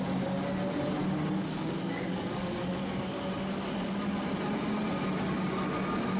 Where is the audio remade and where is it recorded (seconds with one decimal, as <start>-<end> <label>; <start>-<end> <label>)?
0.0-1.4 recorded; 1.4-3.2 remade; 3.2-6.2 recorded